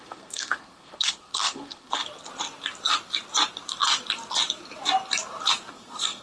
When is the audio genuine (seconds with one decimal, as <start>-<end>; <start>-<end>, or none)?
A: 2.0-5.7